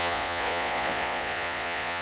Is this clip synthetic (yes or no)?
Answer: yes